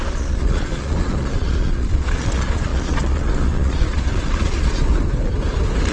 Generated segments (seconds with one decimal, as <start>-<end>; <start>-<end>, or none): 0.0-4.9